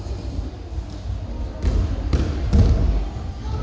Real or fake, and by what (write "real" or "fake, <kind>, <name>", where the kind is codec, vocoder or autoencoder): real